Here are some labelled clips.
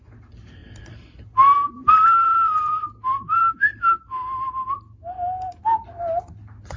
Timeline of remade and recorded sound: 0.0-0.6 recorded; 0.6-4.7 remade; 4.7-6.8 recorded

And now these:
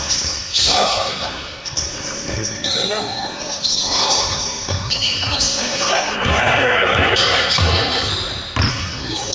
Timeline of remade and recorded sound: 0.0-8.1 remade; 8.1-8.7 recorded; 8.7-9.3 remade

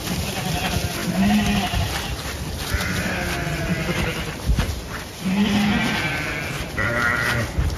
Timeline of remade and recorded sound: 0.0-7.8 recorded

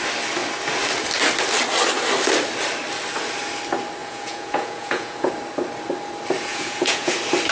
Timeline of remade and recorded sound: 0.0-4.0 recorded; 4.0-5.3 remade; 5.3-6.5 recorded; 6.5-7.1 remade; 7.1-7.5 recorded

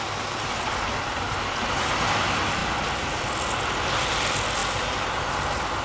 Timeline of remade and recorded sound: 0.0-5.8 recorded

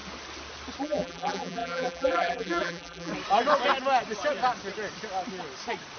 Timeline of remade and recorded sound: 0.0-0.8 recorded; 0.8-3.1 remade; 3.1-6.0 recorded

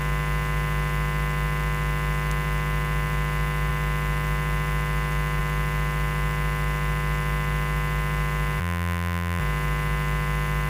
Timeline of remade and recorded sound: 0.0-8.6 recorded; 8.6-9.4 remade; 9.4-10.7 recorded